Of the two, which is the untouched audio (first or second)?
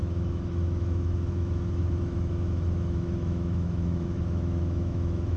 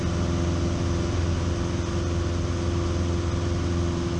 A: second